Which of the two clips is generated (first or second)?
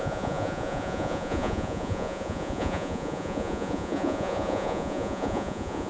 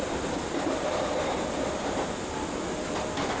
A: first